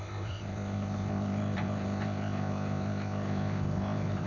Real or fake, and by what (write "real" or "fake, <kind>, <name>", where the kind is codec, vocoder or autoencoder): fake, codec, ZipCodec